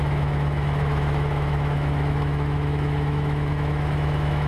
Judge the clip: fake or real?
fake